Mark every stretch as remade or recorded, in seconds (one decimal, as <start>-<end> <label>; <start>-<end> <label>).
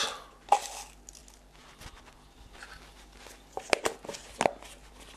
0.0-5.2 recorded